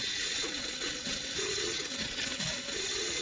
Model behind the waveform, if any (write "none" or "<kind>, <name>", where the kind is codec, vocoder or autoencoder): vocoder, WaveNeXt